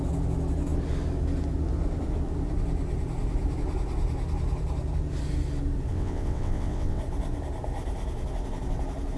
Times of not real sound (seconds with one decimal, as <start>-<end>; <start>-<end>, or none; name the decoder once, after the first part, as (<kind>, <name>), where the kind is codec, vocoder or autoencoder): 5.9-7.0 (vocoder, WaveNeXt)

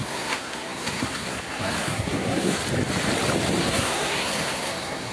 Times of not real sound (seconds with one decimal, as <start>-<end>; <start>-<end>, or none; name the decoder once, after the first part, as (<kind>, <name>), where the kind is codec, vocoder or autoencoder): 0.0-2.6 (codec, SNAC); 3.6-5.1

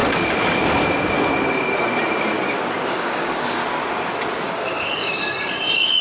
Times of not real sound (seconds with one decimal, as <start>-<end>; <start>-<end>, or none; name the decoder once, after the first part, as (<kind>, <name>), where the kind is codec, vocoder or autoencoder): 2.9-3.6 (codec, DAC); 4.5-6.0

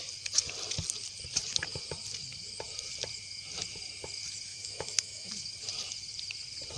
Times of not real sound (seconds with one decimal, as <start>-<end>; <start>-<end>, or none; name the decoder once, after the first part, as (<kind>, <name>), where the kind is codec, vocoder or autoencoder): 4.5-5.3 (autoencoder, DAC-VAE)

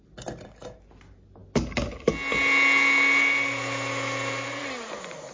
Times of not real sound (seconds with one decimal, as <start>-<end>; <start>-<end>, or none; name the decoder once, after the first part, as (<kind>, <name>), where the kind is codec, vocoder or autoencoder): none